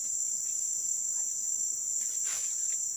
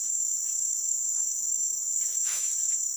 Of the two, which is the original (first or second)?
first